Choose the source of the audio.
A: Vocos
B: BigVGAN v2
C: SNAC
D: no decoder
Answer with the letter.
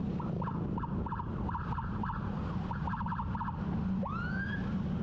D